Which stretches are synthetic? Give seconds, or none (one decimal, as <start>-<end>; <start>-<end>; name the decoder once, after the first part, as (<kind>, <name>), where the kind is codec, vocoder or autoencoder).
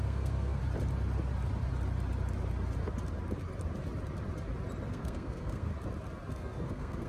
0.0-0.6 (codec, SNAC); 4.9-5.7; 6.3-7.1